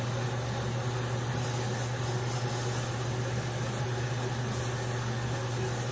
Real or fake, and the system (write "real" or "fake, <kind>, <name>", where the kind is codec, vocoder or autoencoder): real